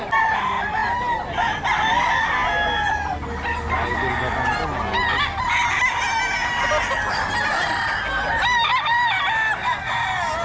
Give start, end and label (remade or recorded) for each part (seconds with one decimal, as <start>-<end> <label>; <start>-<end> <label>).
0.0-10.4 recorded